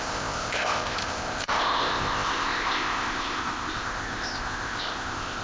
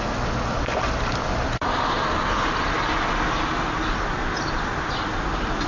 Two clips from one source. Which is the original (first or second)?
second